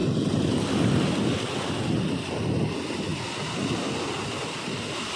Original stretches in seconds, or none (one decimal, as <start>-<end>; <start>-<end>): 0.5-5.2